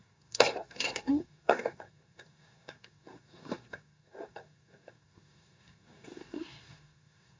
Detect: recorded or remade remade